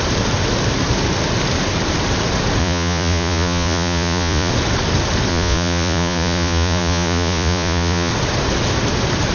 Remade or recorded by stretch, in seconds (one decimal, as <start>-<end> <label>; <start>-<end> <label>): 0.0-2.6 recorded; 2.6-4.5 remade; 4.5-5.3 recorded; 5.3-8.1 remade; 8.1-9.3 recorded